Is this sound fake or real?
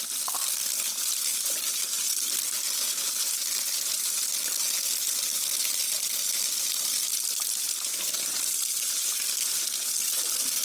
real